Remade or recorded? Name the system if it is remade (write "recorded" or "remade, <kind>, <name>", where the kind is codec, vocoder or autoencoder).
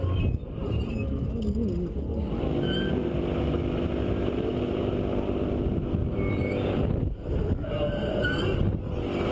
recorded